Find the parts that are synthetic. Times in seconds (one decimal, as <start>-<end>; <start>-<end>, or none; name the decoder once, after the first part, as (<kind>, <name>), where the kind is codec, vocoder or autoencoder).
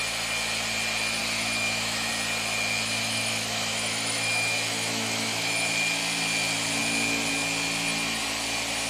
1.2-2.1 (autoencoder, DAC-VAE); 3.0-5.7